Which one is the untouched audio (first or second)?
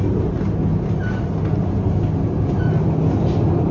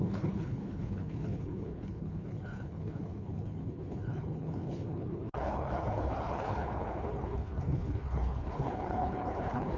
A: first